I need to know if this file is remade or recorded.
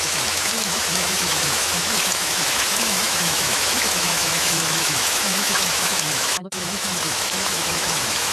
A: remade